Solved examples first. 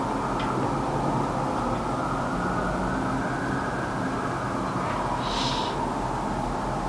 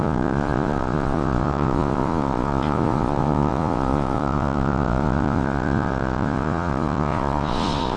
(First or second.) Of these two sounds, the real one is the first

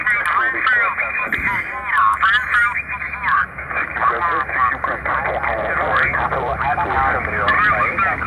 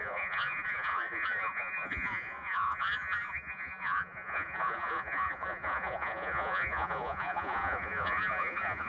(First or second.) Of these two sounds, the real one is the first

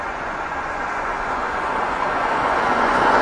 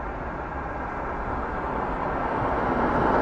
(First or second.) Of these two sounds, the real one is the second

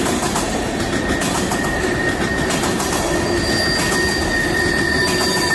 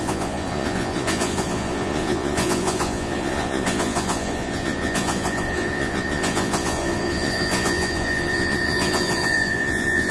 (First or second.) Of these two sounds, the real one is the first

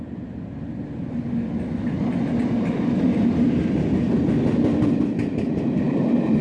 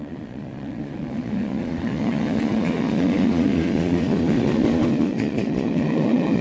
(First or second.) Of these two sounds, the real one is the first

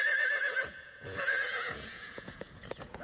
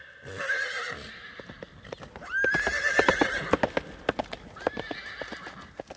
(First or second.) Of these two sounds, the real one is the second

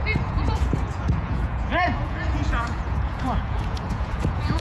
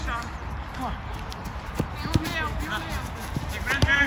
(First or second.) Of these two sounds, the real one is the second